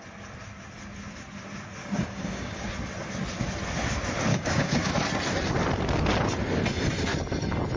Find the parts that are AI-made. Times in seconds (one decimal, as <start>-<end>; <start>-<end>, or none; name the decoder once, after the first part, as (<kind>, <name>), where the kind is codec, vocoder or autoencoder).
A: 1.8-2.6 (codec, DAC); 4.3-4.9